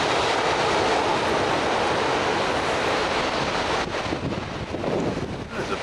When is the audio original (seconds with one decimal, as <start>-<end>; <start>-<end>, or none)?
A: 0.0-5.8